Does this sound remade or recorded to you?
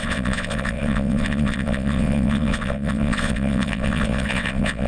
remade